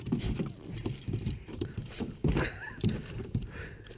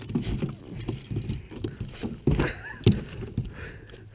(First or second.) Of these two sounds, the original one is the second